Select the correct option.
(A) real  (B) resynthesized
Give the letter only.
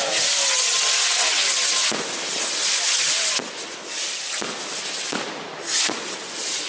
A